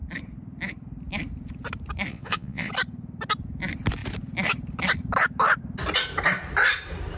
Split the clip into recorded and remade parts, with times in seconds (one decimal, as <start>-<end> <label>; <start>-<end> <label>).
0.0-2.1 recorded; 2.1-2.7 remade; 2.7-7.2 recorded